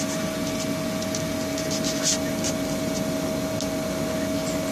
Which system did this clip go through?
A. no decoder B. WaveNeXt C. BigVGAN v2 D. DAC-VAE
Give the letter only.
A